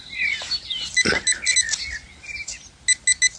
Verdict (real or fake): real